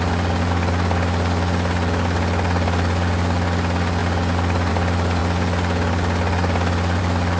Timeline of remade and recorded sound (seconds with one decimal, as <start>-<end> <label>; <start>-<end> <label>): 0.0-7.4 recorded

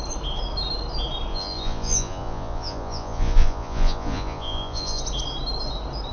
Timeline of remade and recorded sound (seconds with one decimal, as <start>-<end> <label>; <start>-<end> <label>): 0.0-1.3 recorded; 1.3-5.0 remade; 5.0-6.1 recorded

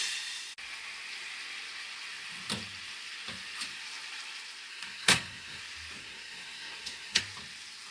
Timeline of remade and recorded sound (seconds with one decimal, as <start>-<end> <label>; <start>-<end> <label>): 0.0-4.7 recorded; 4.7-5.6 remade; 5.6-6.0 recorded; 6.0-7.2 remade; 7.2-7.9 recorded

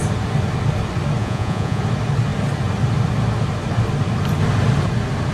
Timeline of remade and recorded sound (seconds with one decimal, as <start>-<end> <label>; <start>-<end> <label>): 0.0-1.2 recorded; 1.2-1.8 remade; 1.8-5.3 recorded